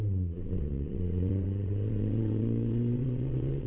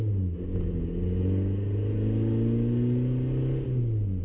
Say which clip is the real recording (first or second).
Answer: second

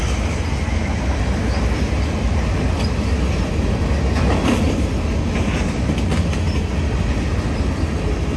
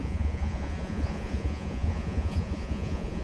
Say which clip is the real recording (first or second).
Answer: first